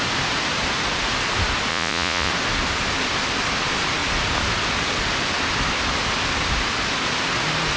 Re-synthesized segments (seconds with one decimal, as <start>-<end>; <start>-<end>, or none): 1.7-2.3